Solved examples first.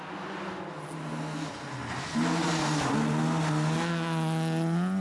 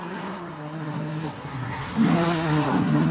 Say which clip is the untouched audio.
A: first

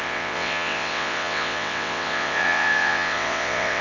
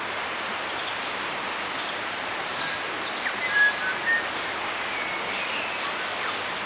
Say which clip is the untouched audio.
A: second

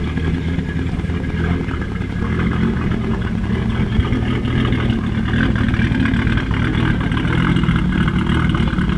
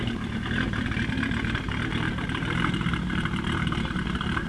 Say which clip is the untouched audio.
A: first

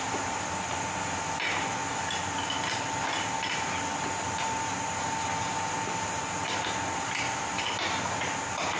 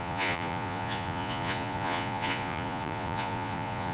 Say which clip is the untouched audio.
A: first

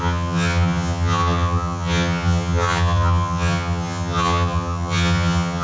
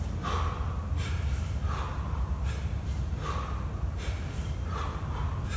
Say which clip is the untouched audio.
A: second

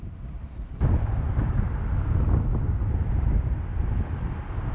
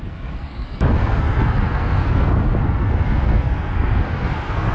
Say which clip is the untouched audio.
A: first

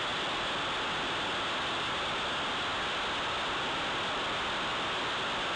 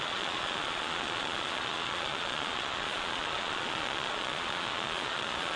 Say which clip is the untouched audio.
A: first